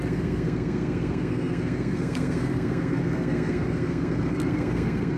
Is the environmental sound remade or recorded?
remade